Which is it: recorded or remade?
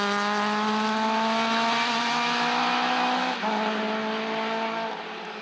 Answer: recorded